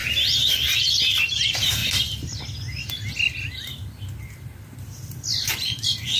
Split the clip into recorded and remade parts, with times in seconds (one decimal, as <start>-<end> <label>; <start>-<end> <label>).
0.0-0.8 recorded; 0.8-1.8 remade; 1.8-5.5 recorded; 5.5-6.2 remade